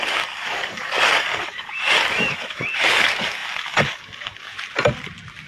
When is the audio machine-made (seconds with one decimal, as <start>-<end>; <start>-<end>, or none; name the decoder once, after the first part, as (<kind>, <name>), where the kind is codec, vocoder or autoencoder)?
0.0-4.5 (codec, DAC)